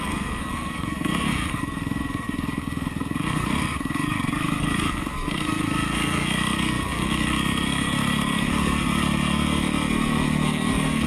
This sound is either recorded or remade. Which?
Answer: remade